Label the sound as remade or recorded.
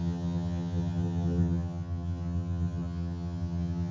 remade